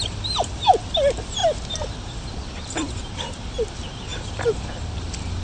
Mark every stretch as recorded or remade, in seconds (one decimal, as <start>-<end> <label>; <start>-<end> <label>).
0.0-1.4 recorded; 1.4-3.0 remade; 3.0-4.1 recorded; 4.1-5.4 remade